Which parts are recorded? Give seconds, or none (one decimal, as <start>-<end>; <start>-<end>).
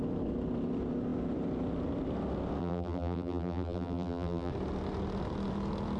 0.0-2.6; 4.5-6.0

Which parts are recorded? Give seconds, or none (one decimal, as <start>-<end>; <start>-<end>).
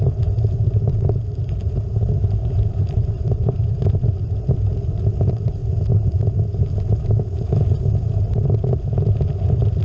0.0-2.4; 3.8-9.8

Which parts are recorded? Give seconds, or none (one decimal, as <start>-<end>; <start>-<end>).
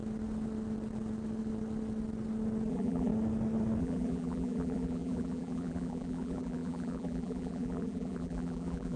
0.0-2.7; 3.1-3.8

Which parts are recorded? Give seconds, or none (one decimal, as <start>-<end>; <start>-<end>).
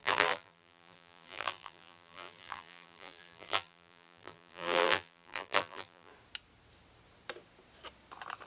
6.1-8.5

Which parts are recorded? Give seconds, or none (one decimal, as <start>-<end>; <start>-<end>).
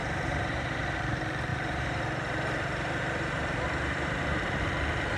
1.0-1.5; 4.6-5.2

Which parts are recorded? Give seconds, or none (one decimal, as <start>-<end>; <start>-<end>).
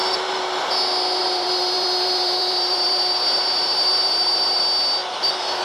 0.6-1.2; 4.6-5.6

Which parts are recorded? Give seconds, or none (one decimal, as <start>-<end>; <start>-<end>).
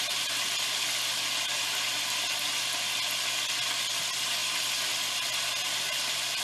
0.0-4.4; 4.9-6.4